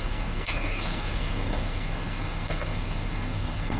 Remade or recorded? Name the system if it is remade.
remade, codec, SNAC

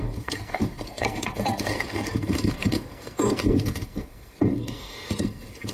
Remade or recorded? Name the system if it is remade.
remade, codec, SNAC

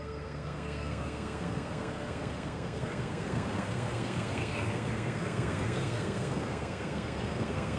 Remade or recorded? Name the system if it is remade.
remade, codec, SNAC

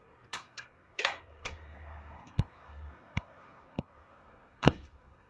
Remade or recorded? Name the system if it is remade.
remade, codec, SNAC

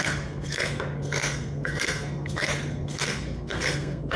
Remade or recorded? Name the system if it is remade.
remade, codec, SNAC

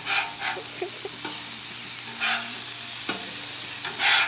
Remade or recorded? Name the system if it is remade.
recorded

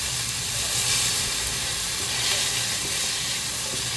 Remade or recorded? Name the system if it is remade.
recorded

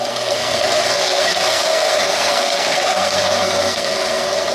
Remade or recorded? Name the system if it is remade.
remade, codec, SNAC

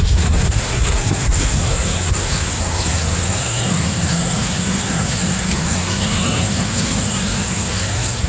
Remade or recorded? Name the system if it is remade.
remade, codec, SNAC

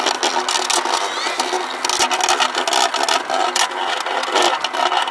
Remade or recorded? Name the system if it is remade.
recorded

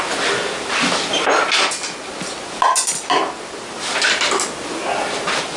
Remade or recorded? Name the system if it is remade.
recorded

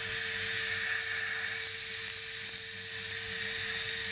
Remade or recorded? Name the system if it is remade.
recorded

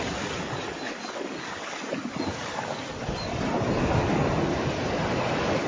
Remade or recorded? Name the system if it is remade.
recorded